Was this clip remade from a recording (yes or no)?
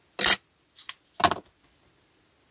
no